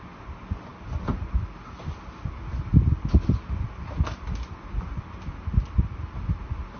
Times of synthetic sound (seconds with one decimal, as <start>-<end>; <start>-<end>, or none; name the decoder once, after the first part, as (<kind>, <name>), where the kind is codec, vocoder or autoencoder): none